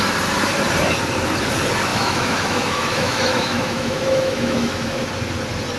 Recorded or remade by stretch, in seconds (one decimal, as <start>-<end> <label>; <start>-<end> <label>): 0.0-1.9 recorded; 1.9-5.1 remade; 5.1-5.8 recorded